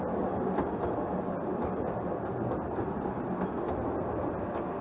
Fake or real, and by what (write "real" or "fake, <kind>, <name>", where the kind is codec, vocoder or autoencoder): real